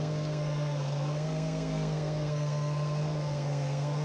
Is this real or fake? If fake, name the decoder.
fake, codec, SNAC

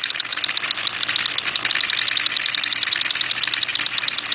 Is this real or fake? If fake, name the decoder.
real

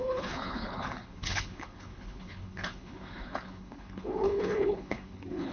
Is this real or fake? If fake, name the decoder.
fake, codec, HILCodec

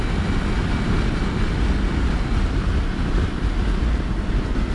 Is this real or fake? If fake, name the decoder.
real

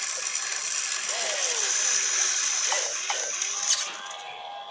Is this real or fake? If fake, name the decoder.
real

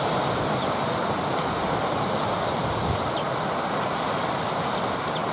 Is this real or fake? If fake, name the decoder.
real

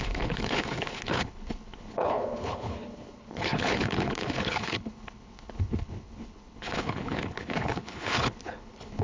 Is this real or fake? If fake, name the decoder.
fake, codec, HILCodec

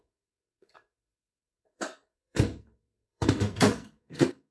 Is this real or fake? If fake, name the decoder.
fake, codec, SNAC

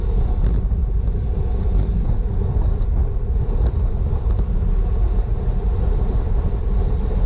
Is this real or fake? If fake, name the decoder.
real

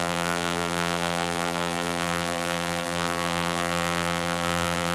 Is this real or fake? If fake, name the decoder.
fake, vocoder, BigVGAN v2